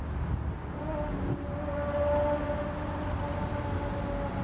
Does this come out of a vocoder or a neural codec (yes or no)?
no